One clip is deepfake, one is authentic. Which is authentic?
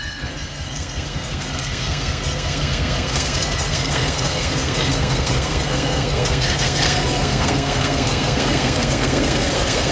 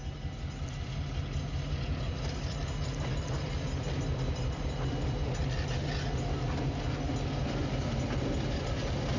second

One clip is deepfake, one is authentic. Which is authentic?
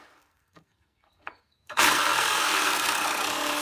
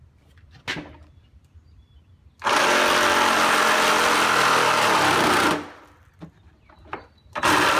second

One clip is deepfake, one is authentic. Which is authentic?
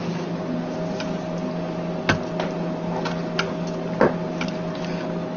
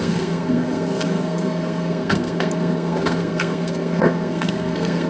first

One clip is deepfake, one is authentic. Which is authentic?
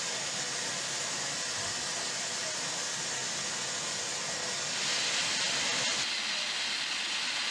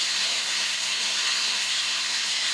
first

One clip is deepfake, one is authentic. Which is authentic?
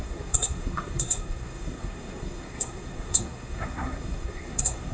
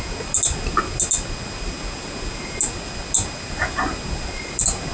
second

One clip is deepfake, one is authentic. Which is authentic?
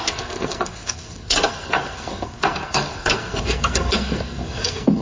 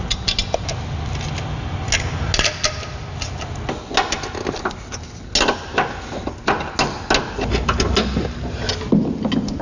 second